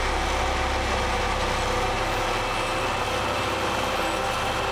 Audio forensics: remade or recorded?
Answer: recorded